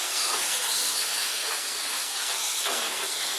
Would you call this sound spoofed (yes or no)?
yes